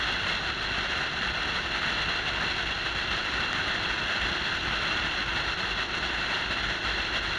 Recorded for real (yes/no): yes